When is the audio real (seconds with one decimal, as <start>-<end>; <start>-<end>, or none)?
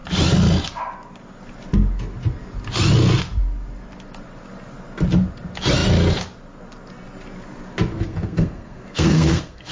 0.0-7.9